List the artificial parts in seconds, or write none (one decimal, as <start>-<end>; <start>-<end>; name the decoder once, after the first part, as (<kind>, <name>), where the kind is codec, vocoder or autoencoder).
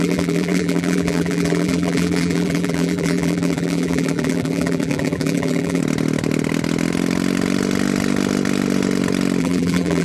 0.0-5.8 (vocoder, BigVGAN v2); 9.4-10.0